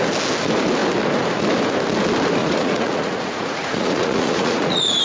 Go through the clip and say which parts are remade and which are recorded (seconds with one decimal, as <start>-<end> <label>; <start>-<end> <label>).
0.0-2.4 recorded; 2.4-5.0 remade